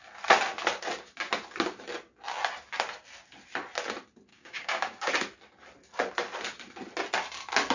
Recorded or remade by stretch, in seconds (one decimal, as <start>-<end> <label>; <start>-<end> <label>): 0.0-4.3 recorded; 4.3-5.1 remade; 5.1-7.7 recorded

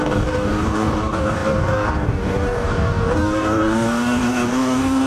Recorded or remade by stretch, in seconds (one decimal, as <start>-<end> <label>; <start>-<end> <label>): 0.0-5.1 remade

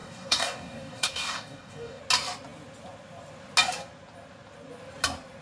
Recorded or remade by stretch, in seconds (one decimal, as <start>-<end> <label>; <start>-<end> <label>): 0.0-2.0 remade; 2.0-5.4 recorded

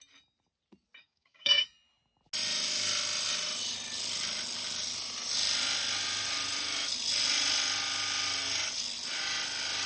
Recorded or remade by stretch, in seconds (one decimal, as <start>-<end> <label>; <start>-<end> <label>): 0.0-1.0 recorded; 1.0-1.6 remade; 1.6-9.9 recorded

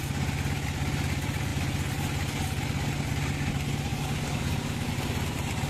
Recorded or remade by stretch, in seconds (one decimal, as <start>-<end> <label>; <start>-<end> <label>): 0.0-3.9 recorded; 3.9-4.9 remade; 4.9-5.7 recorded

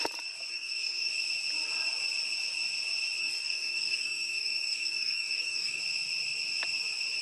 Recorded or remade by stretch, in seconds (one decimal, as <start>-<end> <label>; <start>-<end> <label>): 0.0-0.5 recorded; 0.5-1.1 remade; 1.1-3.2 recorded; 3.2-5.8 remade; 5.8-7.2 recorded